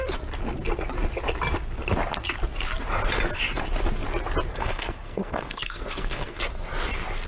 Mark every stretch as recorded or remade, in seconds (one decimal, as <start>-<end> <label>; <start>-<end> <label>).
0.0-4.5 recorded; 4.5-6.4 remade; 6.4-7.3 recorded

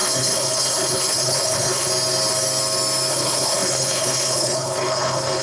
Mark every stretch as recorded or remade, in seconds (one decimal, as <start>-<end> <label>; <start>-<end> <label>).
0.0-1.9 remade; 1.9-3.1 recorded; 3.1-5.4 remade

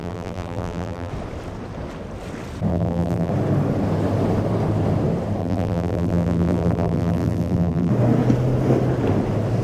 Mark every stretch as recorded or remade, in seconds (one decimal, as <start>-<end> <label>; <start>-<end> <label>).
0.0-1.1 remade; 1.1-2.7 recorded; 2.7-3.3 remade; 3.3-5.4 recorded; 5.4-7.9 remade; 7.9-9.6 recorded

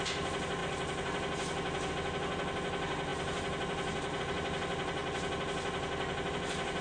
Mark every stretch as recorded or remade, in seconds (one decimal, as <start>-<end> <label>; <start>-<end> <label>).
0.0-6.8 recorded